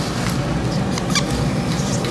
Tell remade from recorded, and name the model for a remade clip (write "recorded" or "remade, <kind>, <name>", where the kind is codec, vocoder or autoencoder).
recorded